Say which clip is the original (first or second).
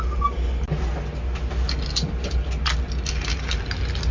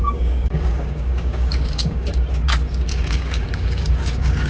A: first